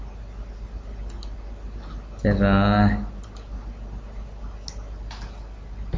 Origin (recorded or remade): recorded